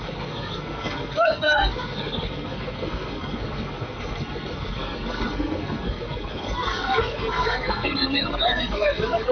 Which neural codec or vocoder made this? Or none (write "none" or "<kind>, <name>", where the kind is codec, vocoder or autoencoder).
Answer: codec, SNAC